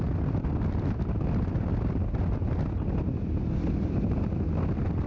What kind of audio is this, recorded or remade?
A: recorded